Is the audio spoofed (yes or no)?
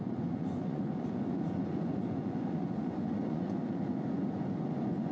yes